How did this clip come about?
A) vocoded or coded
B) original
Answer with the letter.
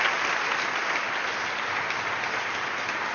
B